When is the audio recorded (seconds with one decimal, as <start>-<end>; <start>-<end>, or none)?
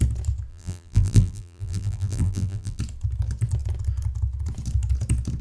0.0-0.5; 2.8-5.4